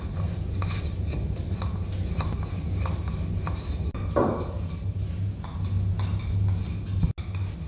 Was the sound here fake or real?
real